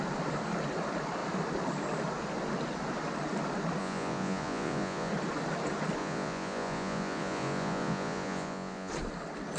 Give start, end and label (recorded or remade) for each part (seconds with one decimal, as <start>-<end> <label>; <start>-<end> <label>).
0.0-3.8 recorded; 3.8-5.1 remade; 5.1-6.0 recorded; 6.0-8.9 remade; 8.9-9.6 recorded

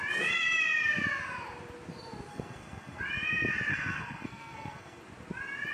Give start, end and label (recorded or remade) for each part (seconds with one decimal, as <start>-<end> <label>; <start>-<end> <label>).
0.0-2.3 recorded; 2.3-3.0 remade; 3.0-3.7 recorded; 3.7-5.0 remade; 5.0-5.7 recorded